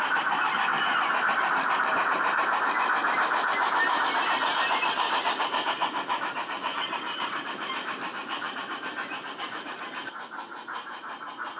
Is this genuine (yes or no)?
no